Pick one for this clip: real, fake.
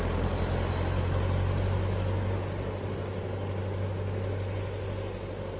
real